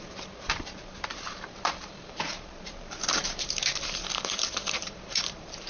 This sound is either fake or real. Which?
fake